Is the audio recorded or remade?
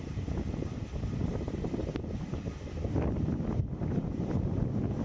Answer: recorded